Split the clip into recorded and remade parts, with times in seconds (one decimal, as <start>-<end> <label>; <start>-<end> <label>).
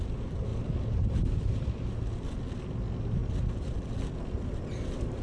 0.0-5.2 recorded